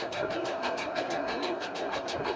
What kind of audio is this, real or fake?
fake